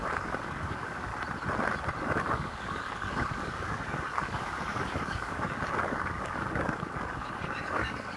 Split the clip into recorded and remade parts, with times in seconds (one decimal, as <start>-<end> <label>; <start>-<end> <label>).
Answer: 0.0-1.1 remade; 1.1-2.0 recorded; 2.0-8.2 remade